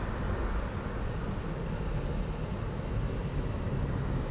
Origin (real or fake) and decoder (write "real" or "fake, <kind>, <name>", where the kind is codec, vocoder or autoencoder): real